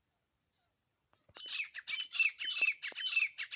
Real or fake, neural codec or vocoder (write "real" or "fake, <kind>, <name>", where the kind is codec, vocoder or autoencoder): real